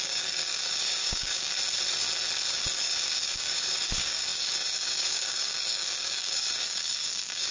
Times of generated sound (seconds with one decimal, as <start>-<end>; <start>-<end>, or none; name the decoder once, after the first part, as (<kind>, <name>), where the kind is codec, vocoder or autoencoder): 0.0-1.5 (codec, DAC); 2.5-7.5